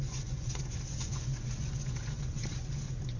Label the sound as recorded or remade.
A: remade